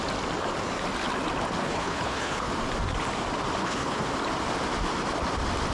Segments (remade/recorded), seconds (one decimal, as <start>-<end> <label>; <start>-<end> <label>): 0.0-1.6 recorded; 1.6-2.5 remade; 2.5-3.6 recorded; 3.6-4.1 remade; 4.1-5.7 recorded